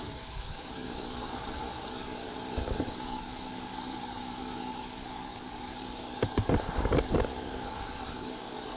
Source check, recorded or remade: remade